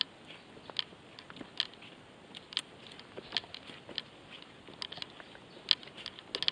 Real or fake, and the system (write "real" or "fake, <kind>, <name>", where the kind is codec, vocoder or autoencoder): real